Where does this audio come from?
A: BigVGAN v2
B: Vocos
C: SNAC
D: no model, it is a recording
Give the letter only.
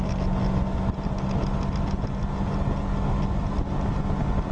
D